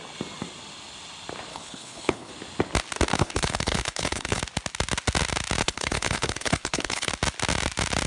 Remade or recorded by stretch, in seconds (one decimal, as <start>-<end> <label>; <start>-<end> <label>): 0.0-1.5 recorded; 1.5-2.3 remade; 2.3-3.1 recorded; 3.1-4.4 remade; 4.4-5.6 recorded; 5.6-7.1 remade; 7.1-8.1 recorded